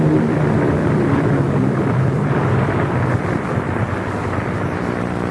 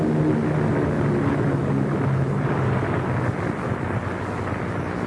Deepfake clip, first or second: first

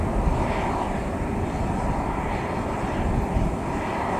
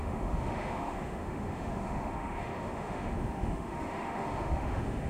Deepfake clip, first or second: second